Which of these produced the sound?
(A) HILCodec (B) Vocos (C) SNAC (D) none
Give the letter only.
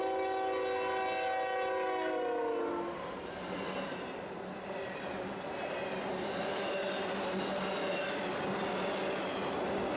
D